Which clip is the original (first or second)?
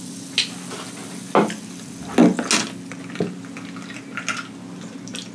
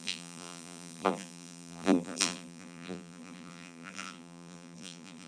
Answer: first